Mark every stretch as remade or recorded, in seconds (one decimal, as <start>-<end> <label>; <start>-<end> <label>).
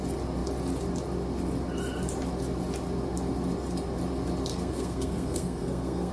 0.0-4.5 recorded; 4.5-6.1 remade